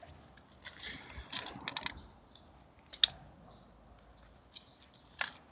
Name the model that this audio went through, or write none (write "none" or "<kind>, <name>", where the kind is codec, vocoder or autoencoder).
none